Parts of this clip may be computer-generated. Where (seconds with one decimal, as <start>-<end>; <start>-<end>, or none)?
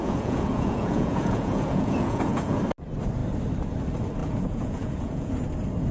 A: 0.0-2.6; 4.2-5.3